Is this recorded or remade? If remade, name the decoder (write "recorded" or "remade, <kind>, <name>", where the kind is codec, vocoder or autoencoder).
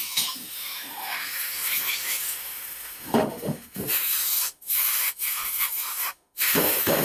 remade, autoencoder, DAC-VAE